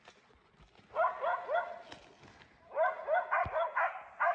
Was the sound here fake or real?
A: real